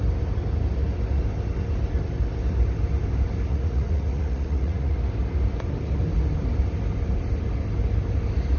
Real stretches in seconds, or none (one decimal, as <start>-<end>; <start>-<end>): 0.0-3.5; 5.0-8.6